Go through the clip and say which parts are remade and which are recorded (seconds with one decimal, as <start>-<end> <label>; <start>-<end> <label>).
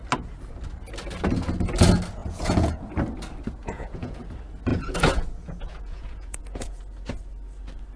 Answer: 0.0-2.2 recorded; 2.2-2.9 remade; 2.9-3.6 recorded; 3.6-4.2 remade; 4.2-4.7 recorded; 4.7-6.8 remade; 6.8-8.0 recorded